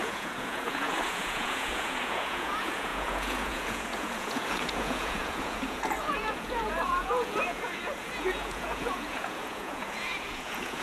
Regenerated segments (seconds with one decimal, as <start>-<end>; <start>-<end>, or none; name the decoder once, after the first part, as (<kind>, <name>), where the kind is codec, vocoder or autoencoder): 0.0-10.8 (vocoder, Vocos)